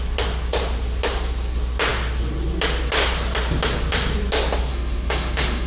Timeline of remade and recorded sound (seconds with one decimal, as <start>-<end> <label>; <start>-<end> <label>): 0.0-4.7 recorded; 4.7-5.7 remade